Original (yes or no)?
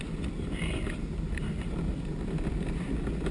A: yes